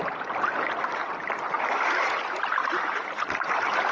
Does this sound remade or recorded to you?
recorded